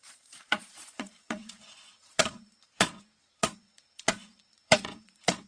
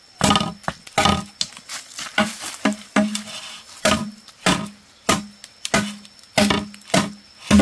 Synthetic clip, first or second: first